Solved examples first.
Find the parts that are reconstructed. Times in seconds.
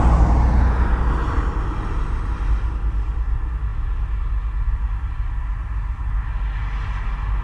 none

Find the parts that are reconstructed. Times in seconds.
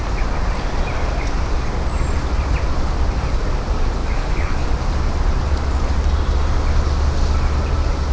4.0-4.7 (codec, DAC)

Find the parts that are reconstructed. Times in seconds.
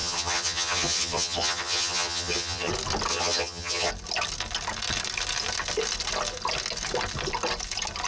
0.0-2.7 (vocoder, HiFi-GAN); 3.1-3.9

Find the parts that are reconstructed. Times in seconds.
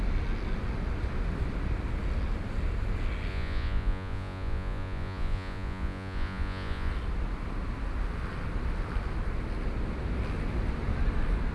3.3-6.9 (vocoder, Vocos)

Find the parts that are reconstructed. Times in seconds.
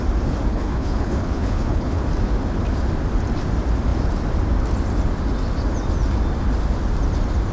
0.5-2.0 (codec, HILCodec)